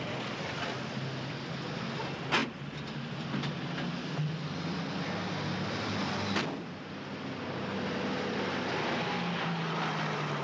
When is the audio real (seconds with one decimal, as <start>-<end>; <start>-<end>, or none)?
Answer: 0.0-10.4